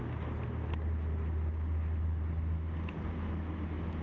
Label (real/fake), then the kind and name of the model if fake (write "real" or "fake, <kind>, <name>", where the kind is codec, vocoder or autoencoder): real